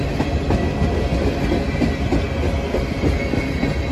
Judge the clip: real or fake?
real